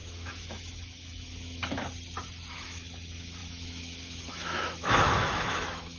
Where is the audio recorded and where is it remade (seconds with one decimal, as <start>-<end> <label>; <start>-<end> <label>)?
0.0-1.8 remade; 1.8-2.5 recorded; 2.5-6.0 remade